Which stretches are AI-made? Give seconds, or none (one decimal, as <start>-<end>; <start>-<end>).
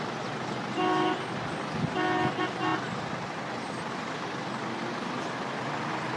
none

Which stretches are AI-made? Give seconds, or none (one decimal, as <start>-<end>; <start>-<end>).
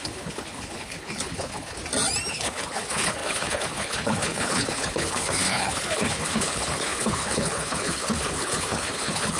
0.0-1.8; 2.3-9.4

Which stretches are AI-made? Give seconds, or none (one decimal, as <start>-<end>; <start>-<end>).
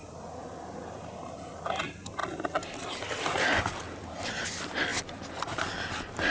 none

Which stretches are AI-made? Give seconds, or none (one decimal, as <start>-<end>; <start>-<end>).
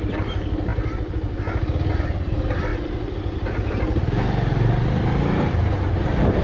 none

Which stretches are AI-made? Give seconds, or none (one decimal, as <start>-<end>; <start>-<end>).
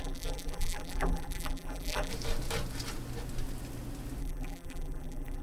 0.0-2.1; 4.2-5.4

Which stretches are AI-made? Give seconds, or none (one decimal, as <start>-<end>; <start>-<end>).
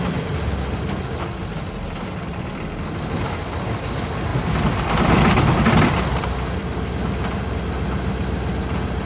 none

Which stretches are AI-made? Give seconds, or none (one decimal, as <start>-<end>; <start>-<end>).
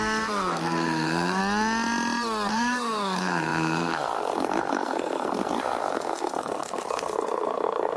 0.0-1.4; 2.5-8.0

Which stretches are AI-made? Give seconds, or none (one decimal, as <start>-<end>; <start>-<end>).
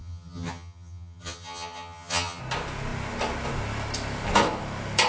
0.0-2.4